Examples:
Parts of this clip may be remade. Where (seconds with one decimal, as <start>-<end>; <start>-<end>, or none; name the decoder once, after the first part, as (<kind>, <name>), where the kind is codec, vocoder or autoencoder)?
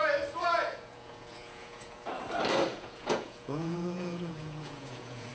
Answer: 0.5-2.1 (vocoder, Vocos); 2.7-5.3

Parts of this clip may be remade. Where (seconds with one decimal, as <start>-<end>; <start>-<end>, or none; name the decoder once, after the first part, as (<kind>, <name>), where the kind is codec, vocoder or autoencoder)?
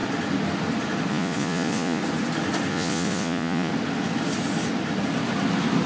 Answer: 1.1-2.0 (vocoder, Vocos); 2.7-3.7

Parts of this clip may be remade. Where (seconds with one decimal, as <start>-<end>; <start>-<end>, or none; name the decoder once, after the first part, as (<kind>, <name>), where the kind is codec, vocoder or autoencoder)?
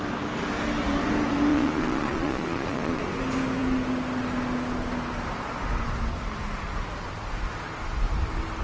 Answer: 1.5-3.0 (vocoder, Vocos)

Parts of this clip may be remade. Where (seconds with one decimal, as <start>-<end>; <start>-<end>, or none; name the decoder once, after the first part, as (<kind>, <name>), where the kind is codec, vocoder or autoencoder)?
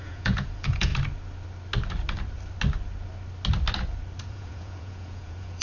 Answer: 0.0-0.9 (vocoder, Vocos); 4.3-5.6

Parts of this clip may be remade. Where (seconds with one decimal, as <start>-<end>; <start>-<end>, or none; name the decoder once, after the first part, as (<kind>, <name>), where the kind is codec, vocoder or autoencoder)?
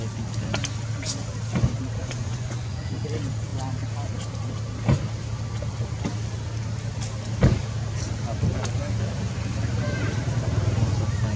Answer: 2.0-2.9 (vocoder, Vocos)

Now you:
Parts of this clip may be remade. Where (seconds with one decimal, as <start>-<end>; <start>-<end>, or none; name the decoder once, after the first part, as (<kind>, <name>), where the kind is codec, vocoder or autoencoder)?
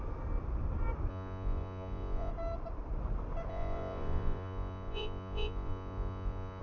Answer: 1.1-2.3 (vocoder, Vocos); 3.5-6.6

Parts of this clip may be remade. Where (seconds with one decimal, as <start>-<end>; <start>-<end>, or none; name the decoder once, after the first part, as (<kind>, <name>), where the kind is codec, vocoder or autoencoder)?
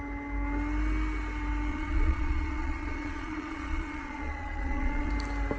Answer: 1.7-5.1 (vocoder, Vocos)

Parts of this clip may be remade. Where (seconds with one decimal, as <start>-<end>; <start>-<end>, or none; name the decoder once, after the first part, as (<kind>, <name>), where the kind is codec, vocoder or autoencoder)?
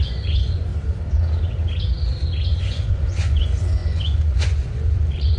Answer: 0.0-0.7 (vocoder, Vocos); 2.6-5.4